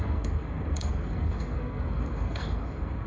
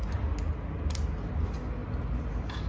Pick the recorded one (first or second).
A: second